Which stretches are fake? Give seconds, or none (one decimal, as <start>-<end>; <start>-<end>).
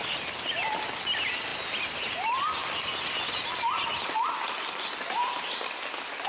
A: none